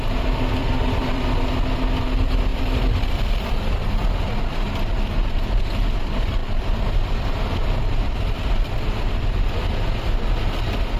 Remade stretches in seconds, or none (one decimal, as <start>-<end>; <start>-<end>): 0.6-1.3; 2.5-4.0; 6.4-8.2

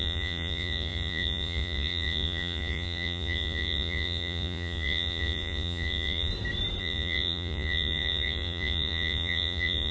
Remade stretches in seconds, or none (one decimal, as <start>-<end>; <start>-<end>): 0.0-6.3; 6.8-9.9